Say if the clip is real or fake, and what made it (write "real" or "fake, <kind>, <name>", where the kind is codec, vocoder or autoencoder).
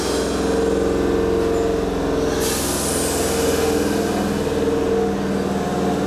real